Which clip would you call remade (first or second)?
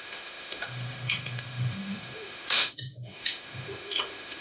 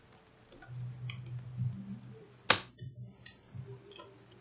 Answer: first